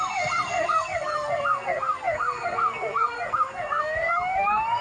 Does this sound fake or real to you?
fake